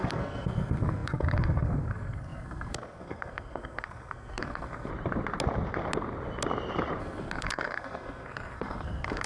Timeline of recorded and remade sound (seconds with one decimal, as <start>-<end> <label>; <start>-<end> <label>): 0.0-4.9 remade; 4.9-7.0 recorded; 7.0-9.3 remade

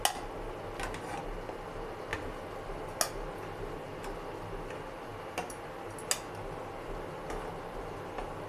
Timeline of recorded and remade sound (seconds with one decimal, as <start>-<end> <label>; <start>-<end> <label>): 0.0-8.5 recorded

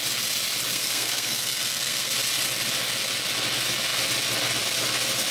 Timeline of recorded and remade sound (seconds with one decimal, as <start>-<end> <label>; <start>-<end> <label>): 0.0-0.7 recorded; 0.7-2.1 remade; 2.1-5.3 recorded